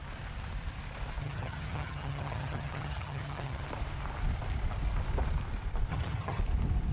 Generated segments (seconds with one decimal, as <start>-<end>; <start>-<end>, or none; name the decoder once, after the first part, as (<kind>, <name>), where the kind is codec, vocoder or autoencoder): 1.2-3.6 (vocoder, HiFi-GAN); 5.9-6.4